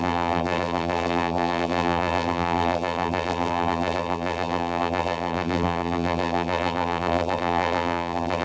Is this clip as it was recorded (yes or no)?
no